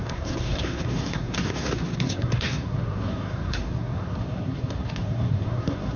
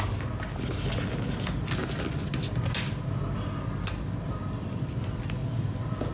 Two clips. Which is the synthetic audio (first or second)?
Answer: first